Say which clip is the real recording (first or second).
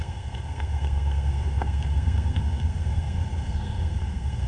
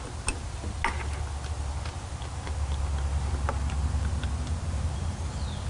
second